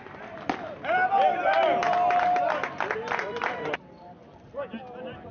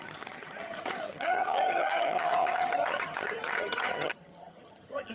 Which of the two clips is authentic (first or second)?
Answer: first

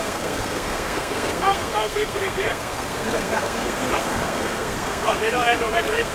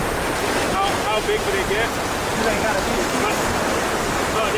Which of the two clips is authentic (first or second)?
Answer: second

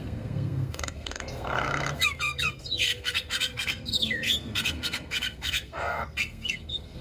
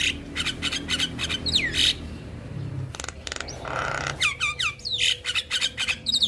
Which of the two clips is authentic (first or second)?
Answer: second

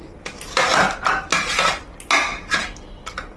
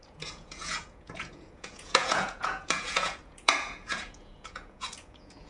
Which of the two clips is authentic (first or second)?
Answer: first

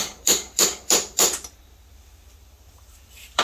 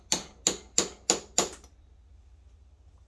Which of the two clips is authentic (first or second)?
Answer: second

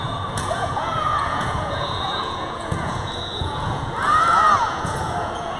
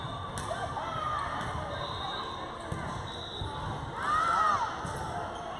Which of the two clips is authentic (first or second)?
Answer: second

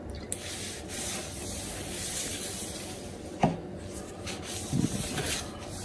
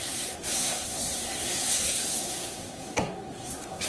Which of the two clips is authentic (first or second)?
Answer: first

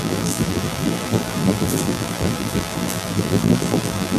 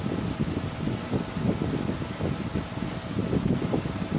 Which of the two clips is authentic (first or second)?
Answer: second